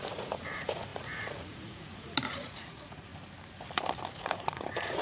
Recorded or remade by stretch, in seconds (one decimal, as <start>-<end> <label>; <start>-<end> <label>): 0.0-3.1 remade; 3.1-4.2 recorded; 4.2-5.0 remade